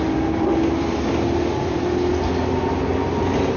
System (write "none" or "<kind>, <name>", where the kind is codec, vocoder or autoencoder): none